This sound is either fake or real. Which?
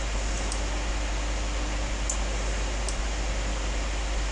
real